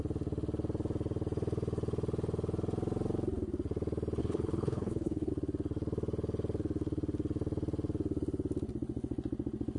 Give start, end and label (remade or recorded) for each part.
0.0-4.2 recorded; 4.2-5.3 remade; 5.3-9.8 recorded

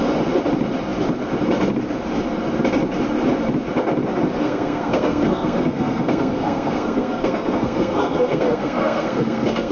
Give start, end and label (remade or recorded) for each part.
0.0-4.4 recorded; 4.4-9.7 remade

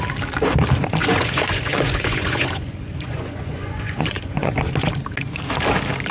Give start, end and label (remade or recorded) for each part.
0.0-1.0 recorded; 1.0-4.5 remade; 4.5-6.1 recorded

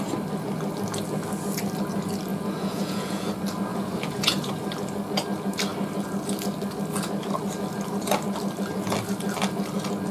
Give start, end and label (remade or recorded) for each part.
0.0-2.3 recorded; 2.3-3.3 remade; 3.3-3.7 recorded; 3.7-4.5 remade; 4.5-10.1 recorded

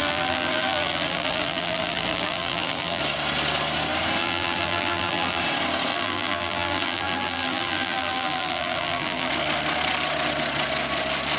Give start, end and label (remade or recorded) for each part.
0.0-3.0 remade; 3.0-4.2 recorded; 4.2-5.4 remade; 5.4-5.9 recorded; 5.9-9.3 remade; 9.3-11.4 recorded

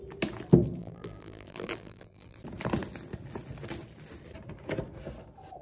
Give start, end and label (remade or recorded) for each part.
0.0-0.8 recorded; 0.8-2.4 remade; 2.4-5.6 recorded

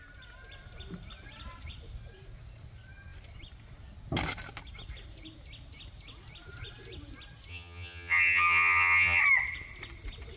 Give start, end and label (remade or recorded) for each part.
0.0-7.5 recorded; 7.5-9.2 remade; 9.2-10.4 recorded

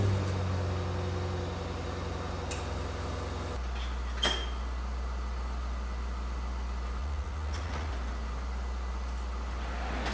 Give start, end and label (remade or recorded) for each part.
0.0-7.0 recorded; 7.0-7.9 remade; 7.9-10.1 recorded